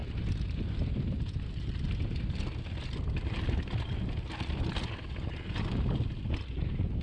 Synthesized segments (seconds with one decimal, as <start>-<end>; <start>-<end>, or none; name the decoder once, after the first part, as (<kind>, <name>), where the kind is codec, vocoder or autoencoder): none